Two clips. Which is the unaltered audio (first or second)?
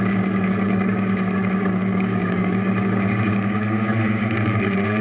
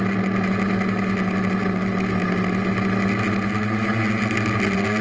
second